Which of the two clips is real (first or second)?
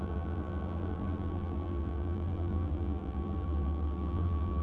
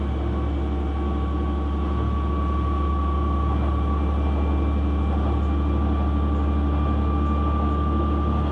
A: second